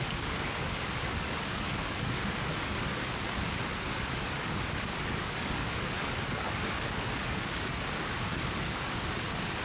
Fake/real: fake